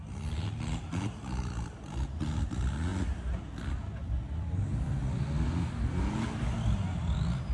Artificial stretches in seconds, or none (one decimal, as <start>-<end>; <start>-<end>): none